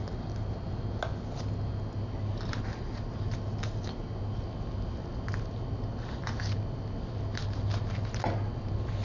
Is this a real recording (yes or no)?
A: yes